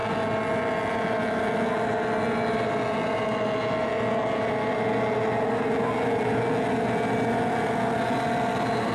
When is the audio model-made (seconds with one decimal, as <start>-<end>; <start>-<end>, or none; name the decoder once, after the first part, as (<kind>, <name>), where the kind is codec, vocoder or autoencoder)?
none